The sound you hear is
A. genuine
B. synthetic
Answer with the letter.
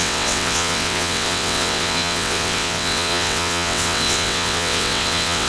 B